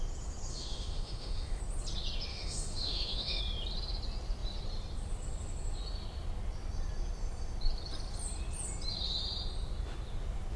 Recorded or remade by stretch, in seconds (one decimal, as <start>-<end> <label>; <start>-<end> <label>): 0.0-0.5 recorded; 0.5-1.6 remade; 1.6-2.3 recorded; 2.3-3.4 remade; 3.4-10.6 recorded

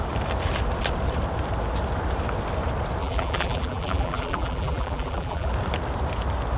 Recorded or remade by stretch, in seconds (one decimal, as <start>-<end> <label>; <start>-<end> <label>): 0.0-3.0 recorded; 3.0-5.5 remade; 5.5-6.6 recorded

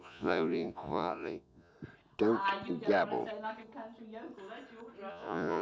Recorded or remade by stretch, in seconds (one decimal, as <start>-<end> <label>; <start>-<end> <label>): 0.0-1.7 remade; 1.7-5.1 recorded; 5.1-5.6 remade

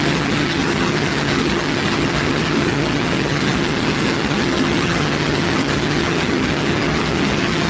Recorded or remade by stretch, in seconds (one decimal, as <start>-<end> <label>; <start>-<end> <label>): 0.0-7.7 remade